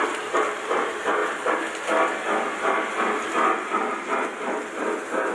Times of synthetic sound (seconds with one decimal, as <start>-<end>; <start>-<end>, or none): none